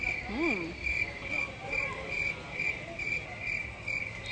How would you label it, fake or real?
real